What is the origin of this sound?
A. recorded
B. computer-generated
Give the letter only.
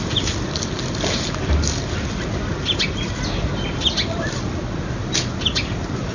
A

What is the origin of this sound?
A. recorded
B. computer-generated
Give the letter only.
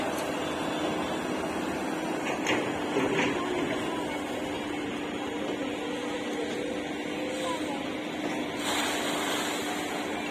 A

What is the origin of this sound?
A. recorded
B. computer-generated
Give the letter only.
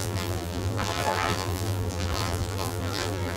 B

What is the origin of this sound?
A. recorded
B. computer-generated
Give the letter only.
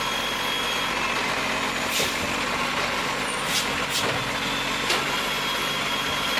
A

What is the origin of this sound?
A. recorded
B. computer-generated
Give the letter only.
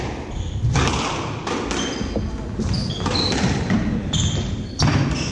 A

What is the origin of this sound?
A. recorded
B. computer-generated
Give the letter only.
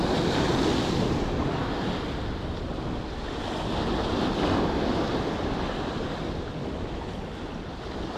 A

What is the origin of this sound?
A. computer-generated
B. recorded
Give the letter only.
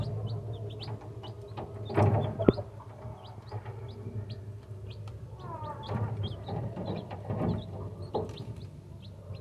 B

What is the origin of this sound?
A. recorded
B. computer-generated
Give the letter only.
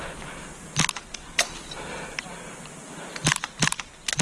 A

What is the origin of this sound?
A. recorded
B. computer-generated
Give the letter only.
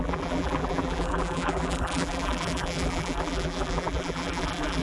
B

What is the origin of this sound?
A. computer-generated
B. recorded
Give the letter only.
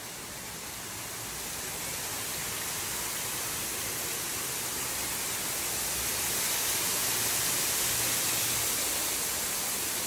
B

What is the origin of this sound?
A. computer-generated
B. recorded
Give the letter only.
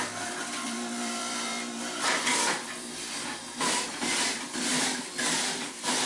A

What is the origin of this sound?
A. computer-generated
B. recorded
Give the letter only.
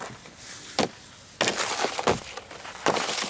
B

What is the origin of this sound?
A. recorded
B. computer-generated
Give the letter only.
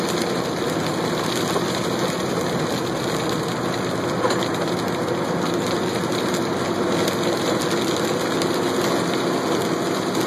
A